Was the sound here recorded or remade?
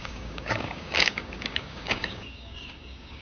remade